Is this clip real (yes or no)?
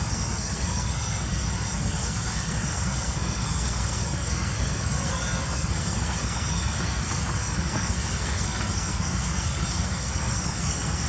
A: no